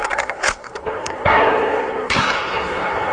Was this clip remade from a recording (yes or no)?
yes